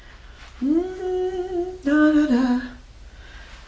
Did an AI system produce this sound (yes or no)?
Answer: no